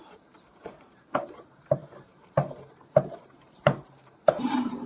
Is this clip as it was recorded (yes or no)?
no